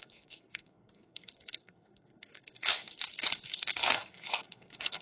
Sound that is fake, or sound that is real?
fake